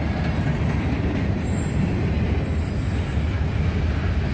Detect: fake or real real